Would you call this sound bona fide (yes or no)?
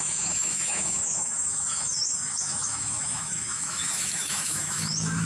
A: no